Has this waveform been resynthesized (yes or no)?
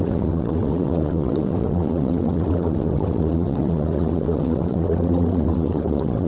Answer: yes